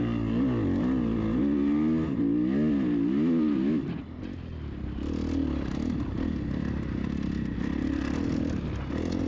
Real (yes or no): yes